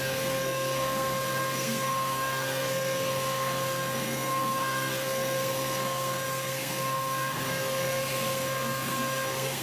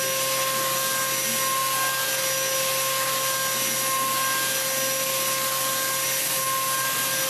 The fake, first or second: first